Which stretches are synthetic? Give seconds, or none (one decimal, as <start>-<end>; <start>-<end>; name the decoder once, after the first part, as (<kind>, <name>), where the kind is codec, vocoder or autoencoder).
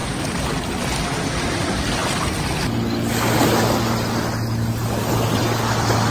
none